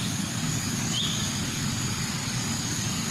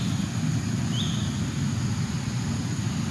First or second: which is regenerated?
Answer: first